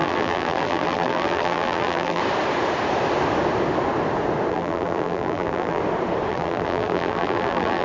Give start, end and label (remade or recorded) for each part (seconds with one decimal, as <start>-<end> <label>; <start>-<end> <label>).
0.0-2.2 remade; 2.2-4.5 recorded; 4.5-5.8 remade; 5.8-6.3 recorded; 6.3-7.8 remade